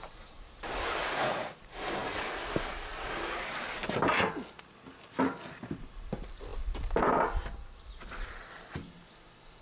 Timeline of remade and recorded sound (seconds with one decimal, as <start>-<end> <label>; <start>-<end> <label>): 0.0-1.0 recorded; 1.0-1.6 remade; 1.6-9.6 recorded